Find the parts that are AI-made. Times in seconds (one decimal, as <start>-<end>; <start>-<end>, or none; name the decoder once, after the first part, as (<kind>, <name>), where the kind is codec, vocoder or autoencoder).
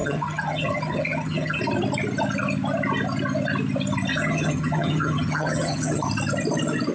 0.0-1.6 (vocoder, HiFi-GAN); 4.1-6.0